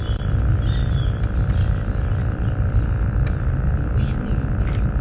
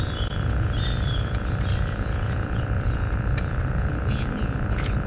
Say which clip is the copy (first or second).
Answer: second